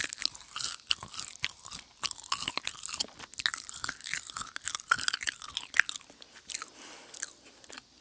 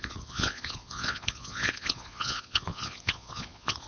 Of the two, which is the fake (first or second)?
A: second